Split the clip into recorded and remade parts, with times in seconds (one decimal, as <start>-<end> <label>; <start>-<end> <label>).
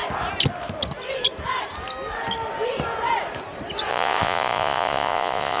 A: 0.0-3.9 recorded; 3.9-5.6 remade